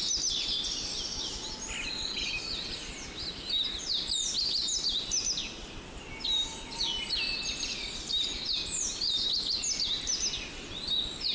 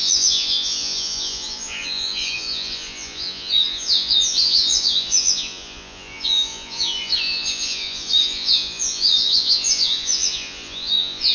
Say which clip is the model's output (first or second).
second